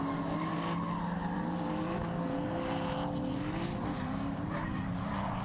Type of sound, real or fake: real